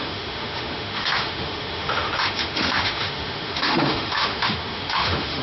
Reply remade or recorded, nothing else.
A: remade